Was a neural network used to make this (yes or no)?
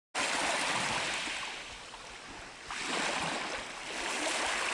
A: no